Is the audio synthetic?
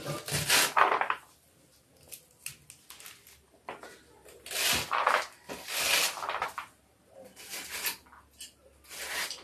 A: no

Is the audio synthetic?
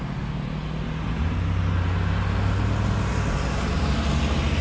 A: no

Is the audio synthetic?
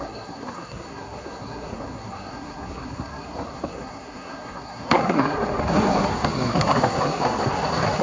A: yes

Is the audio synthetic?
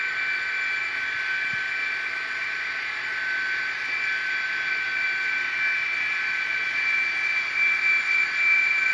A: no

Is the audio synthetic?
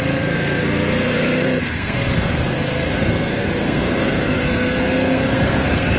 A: yes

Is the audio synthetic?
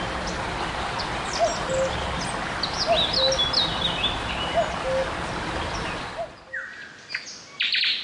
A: no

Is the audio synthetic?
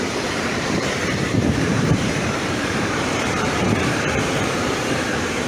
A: yes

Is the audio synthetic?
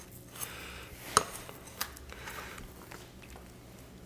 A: no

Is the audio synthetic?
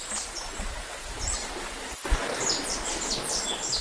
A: no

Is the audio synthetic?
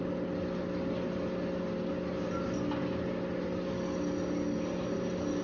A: no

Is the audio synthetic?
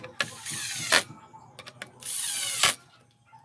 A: no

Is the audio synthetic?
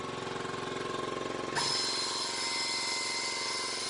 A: no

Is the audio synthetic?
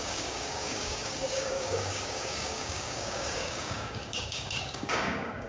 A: yes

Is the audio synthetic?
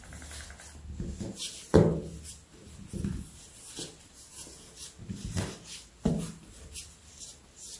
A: no